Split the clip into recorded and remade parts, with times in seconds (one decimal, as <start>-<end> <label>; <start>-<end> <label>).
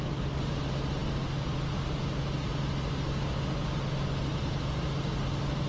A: 0.0-5.7 recorded